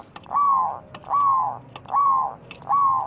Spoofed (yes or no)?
no